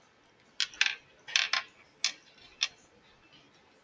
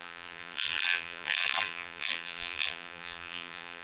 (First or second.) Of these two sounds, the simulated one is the second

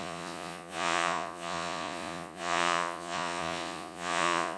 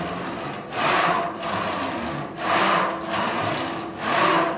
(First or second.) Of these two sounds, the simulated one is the first